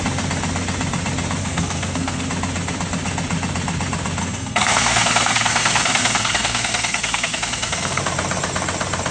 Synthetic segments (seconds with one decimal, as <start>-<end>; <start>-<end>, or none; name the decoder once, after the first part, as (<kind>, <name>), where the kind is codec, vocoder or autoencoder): 1.4-2.2 (codec, SNAC); 4.2-8.0

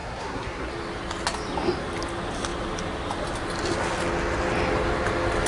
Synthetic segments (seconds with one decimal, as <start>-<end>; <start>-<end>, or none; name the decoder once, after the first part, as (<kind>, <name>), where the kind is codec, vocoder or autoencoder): 0.0-0.7 (codec, SNAC)

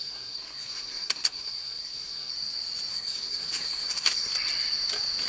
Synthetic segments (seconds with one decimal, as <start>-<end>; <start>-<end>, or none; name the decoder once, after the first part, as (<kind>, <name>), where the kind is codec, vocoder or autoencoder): 0.0-2.3 (codec, SNAC); 2.9-4.3

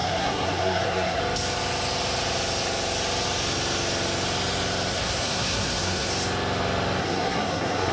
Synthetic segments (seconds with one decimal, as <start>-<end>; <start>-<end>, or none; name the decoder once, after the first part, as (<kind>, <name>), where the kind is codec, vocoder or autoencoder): 0.0-1.2 (codec, SNAC); 4.9-6.1; 7.0-7.9